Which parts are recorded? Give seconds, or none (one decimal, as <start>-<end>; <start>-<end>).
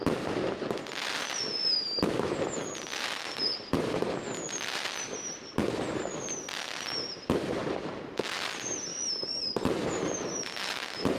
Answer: 0.0-11.2